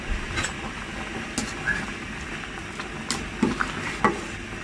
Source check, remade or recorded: recorded